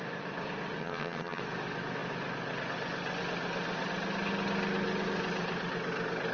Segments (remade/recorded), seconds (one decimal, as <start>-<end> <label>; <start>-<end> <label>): 0.0-0.8 recorded; 0.8-1.4 remade; 1.4-6.3 recorded